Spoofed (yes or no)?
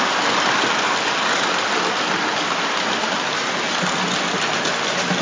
no